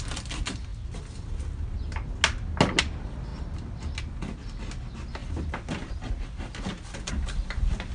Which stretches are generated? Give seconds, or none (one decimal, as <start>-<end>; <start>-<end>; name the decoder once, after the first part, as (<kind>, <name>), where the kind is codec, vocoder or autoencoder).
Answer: none